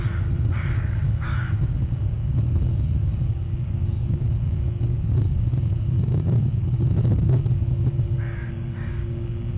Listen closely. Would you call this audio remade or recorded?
remade